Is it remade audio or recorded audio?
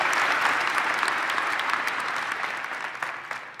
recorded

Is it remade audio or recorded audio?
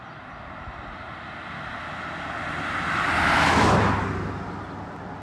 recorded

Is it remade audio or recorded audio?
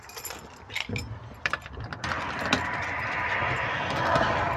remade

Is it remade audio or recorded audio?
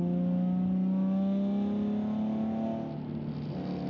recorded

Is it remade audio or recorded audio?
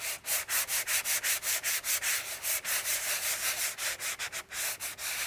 recorded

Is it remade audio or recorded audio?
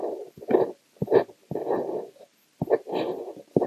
recorded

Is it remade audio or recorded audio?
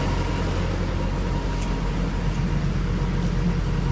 recorded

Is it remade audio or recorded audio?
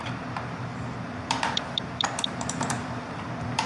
remade